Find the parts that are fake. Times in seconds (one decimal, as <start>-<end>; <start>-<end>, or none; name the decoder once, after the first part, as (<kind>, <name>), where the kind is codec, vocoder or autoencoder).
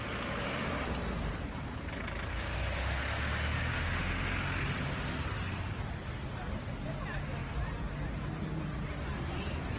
2.3-4.3 (autoencoder, DAC-VAE)